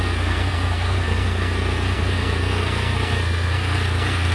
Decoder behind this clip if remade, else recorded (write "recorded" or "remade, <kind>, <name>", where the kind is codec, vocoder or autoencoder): remade, codec, SNAC